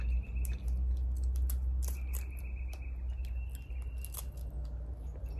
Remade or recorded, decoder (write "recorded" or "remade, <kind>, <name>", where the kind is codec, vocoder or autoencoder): recorded